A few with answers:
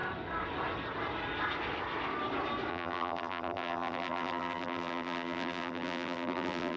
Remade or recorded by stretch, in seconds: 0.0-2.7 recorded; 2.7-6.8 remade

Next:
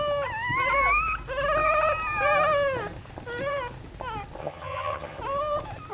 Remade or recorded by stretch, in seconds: 0.0-4.4 recorded; 4.4-5.2 remade; 5.2-5.9 recorded

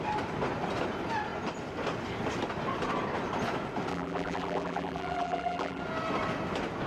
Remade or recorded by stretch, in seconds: 0.0-3.9 recorded; 3.9-5.8 remade; 5.8-6.9 recorded